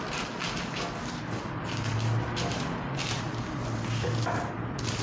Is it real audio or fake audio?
real